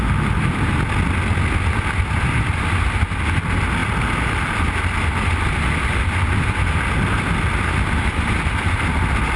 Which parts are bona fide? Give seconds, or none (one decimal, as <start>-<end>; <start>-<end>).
0.0-9.4